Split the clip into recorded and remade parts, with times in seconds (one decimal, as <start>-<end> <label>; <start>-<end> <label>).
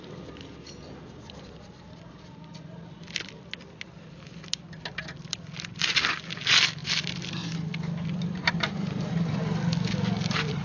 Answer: 0.0-6.8 recorded; 6.8-10.6 remade